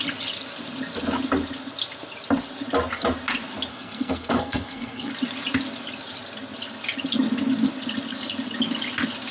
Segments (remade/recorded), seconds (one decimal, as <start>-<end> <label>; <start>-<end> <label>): 0.0-3.7 recorded; 3.7-5.1 remade; 5.1-9.3 recorded